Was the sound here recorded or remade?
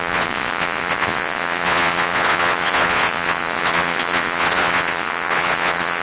remade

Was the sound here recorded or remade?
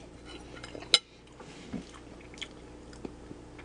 recorded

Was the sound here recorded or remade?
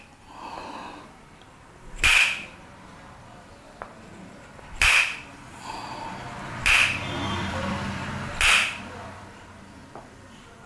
remade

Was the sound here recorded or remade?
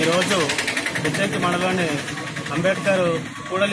recorded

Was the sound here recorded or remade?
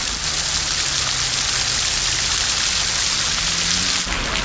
recorded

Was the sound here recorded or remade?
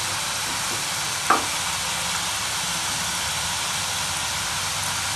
recorded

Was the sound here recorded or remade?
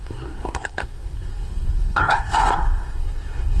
remade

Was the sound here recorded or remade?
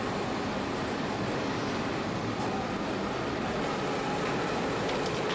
recorded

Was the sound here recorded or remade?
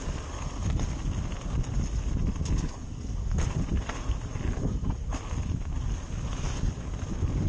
recorded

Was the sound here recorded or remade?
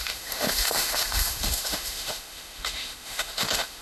remade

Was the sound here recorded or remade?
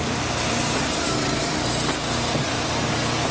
recorded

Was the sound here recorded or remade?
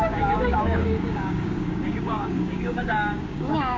remade